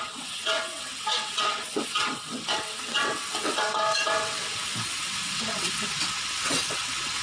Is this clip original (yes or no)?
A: no